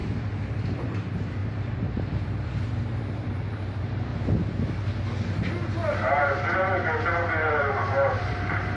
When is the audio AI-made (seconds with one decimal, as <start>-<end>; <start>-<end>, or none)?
0.0-4.1; 7.5-8.8